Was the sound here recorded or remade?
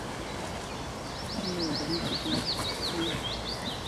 recorded